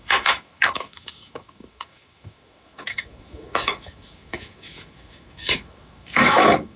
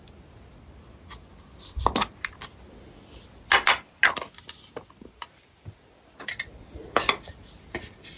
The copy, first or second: first